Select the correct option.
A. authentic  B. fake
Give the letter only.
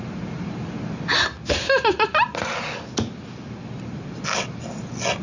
A